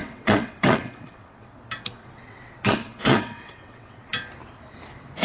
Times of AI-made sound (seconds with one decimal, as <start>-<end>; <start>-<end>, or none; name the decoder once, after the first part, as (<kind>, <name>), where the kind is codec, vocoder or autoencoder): 0.0-1.6 (vocoder, WaveNeXt); 2.0-4.1